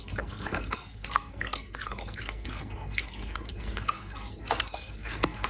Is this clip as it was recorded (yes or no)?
no